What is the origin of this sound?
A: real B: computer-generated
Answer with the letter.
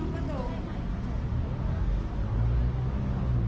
A